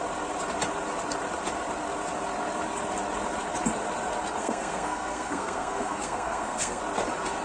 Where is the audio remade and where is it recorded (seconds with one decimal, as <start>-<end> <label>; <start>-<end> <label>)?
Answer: 0.0-4.4 recorded; 4.4-6.8 remade; 6.8-7.4 recorded